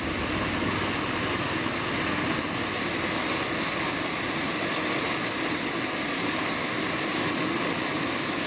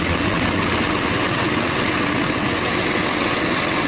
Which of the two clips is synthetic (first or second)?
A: second